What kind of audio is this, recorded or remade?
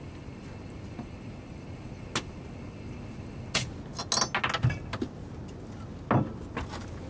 recorded